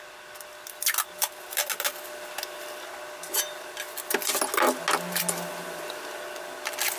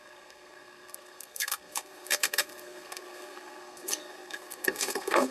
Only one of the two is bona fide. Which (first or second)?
first